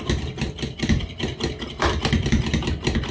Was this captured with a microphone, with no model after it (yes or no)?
yes